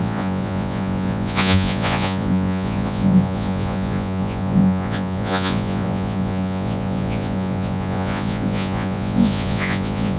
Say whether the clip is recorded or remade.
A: remade